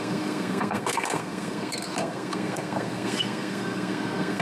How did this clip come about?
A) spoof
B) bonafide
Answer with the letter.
A